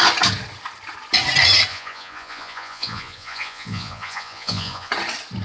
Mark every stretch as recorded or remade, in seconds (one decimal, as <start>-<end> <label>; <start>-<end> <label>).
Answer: 0.0-1.7 recorded; 1.7-4.9 remade; 4.9-5.4 recorded